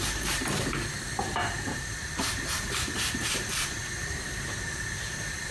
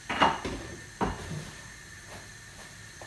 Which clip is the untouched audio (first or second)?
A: second